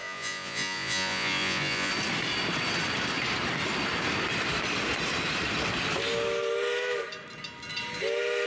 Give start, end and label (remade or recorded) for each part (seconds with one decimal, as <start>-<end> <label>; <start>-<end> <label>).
0.0-1.9 remade; 1.9-8.5 recorded